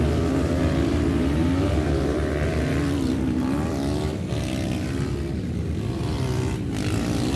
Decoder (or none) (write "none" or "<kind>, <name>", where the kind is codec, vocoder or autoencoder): none